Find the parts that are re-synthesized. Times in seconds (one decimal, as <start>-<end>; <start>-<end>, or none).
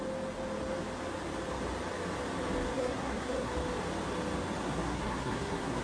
2.7-3.5; 4.6-5.8